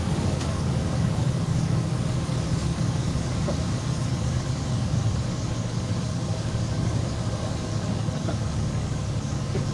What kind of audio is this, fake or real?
fake